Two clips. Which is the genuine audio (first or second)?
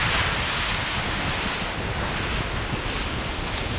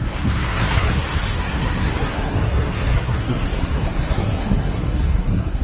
first